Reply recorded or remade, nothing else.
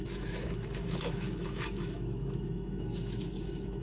remade